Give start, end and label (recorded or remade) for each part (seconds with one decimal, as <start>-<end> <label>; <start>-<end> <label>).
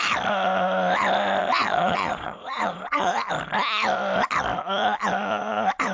0.0-1.4 recorded; 1.4-3.1 remade; 3.1-5.9 recorded